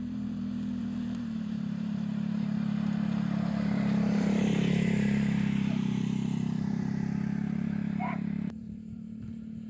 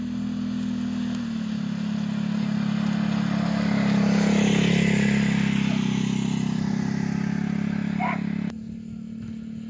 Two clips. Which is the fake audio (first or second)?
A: first